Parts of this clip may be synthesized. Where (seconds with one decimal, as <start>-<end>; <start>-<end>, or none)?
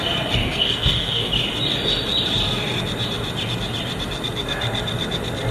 0.4-1.3